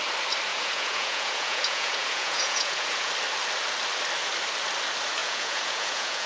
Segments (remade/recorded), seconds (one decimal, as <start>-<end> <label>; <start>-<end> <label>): 0.0-0.5 recorded; 0.5-3.1 remade; 3.1-5.2 recorded; 5.2-6.3 remade